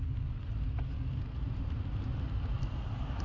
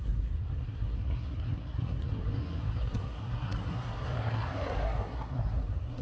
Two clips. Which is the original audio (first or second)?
first